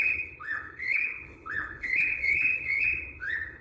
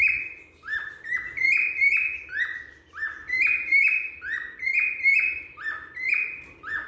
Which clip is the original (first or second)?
second